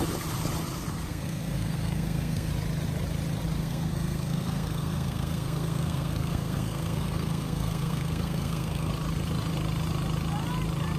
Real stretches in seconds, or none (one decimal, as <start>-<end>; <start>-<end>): 0.0-1.1; 2.5-3.6; 8.9-11.0